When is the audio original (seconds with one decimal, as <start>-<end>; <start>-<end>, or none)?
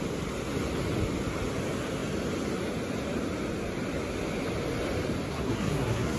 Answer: 0.0-5.3